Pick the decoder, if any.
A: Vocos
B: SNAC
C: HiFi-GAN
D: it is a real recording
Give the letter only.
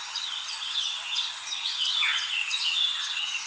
C